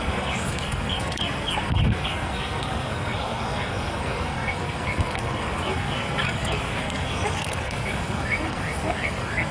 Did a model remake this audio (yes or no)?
yes